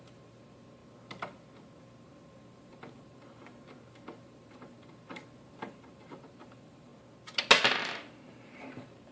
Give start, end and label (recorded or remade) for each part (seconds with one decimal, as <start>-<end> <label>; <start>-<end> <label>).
0.0-0.8 remade; 0.8-1.8 recorded; 1.8-3.5 remade; 3.5-4.2 recorded; 4.2-5.2 remade; 5.2-5.7 recorded; 5.7-6.9 remade; 6.9-8.3 recorded; 8.3-9.1 remade